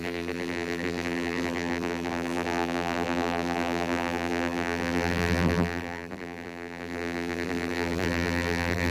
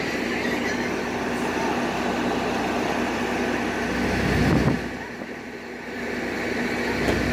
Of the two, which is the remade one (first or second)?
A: first